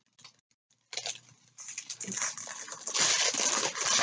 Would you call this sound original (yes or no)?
yes